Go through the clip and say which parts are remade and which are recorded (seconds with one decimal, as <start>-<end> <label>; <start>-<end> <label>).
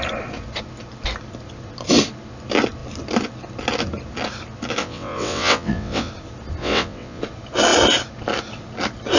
0.0-4.8 recorded; 4.8-6.1 remade; 6.1-6.6 recorded; 6.6-7.2 remade; 7.2-9.2 recorded